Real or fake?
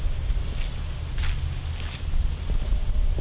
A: real